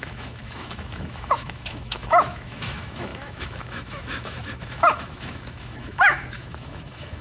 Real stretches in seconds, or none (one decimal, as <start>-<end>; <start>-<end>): none